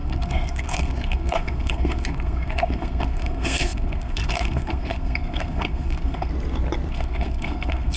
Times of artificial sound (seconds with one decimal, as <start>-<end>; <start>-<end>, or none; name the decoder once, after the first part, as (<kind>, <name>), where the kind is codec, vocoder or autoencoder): 0.0-6.3 (codec, SNAC); 6.9-8.0